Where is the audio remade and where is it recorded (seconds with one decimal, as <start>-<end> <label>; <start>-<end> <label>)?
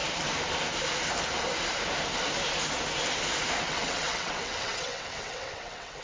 0.0-3.6 recorded; 3.6-6.0 remade